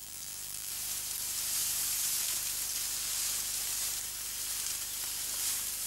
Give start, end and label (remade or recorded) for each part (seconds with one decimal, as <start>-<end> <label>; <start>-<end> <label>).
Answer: 0.0-0.7 remade; 0.7-5.9 recorded